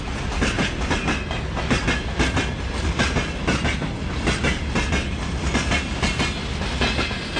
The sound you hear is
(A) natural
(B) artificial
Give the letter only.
A